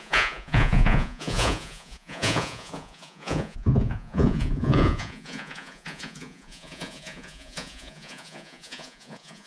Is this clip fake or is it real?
fake